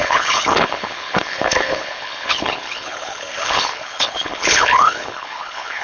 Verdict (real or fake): fake